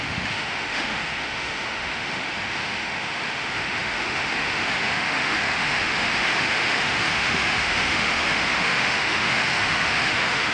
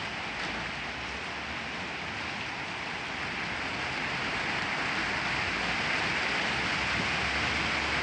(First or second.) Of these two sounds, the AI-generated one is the first